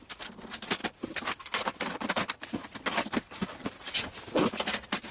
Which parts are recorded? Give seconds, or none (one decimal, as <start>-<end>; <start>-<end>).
0.0-0.8; 3.9-5.1